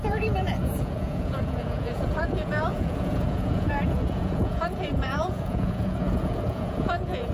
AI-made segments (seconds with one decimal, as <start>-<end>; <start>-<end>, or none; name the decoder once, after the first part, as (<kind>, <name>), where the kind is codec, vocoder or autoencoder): 0.0-7.3 (vocoder, Vocos)